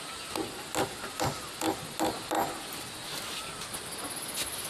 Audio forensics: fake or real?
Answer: real